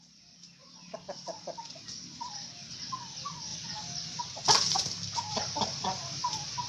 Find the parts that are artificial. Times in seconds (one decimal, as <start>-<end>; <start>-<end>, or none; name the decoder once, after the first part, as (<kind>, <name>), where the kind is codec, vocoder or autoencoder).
none